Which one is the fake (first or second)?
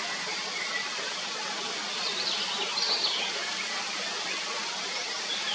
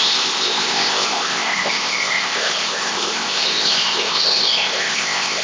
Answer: second